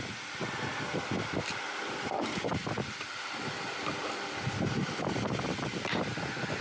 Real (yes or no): yes